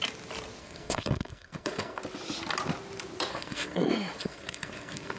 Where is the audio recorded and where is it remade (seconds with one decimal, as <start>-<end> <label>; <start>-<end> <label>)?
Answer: 0.0-0.6 recorded; 0.6-2.0 remade; 2.0-3.3 recorded; 3.3-5.2 remade